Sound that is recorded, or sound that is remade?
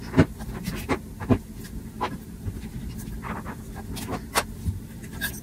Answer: recorded